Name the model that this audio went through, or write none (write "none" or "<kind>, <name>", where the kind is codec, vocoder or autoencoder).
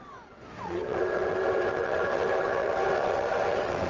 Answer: vocoder, WaveNeXt